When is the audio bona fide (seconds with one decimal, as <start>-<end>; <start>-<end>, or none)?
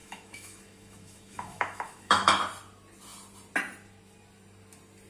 2.3-5.1